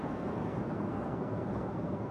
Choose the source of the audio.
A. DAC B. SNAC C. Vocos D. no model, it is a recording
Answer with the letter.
B